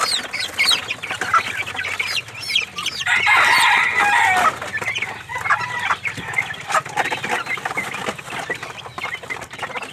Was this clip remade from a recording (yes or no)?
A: no